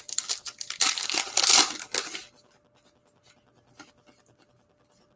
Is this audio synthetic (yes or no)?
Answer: no